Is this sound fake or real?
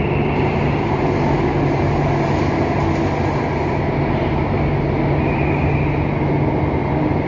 real